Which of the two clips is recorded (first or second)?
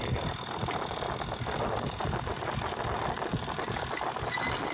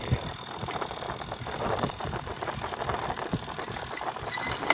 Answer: first